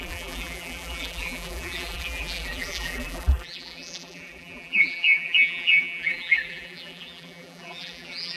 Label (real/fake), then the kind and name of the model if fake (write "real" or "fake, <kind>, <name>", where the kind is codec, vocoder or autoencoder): fake, vocoder, BigVGAN v2